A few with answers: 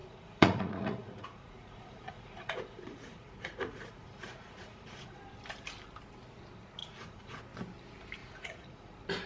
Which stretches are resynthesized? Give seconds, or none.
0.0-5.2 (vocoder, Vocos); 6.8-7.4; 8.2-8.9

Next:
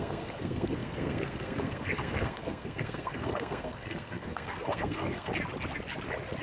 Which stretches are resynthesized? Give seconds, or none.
0.0-5.3 (codec, SNAC)

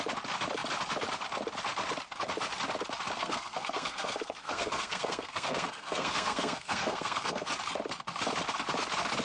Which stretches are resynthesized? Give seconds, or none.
3.2-7.5 (codec, SNAC)

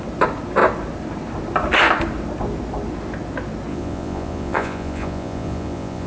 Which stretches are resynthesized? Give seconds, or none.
3.7-6.1 (vocoder, Vocos)

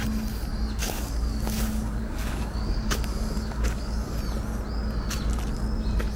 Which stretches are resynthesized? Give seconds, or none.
0.8-4.2 (codec, DAC)